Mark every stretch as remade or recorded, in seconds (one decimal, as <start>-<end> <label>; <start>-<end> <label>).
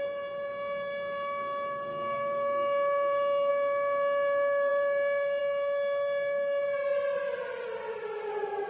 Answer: 0.0-1.9 recorded; 1.9-3.5 remade; 3.5-8.7 recorded